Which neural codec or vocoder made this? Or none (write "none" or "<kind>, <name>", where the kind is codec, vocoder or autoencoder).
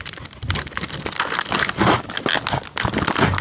none